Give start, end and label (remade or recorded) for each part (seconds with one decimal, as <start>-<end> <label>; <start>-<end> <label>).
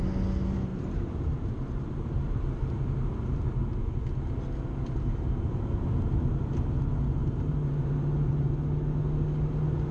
0.0-0.7 recorded; 0.7-3.4 remade; 3.4-7.2 recorded; 7.2-8.5 remade; 8.5-9.9 recorded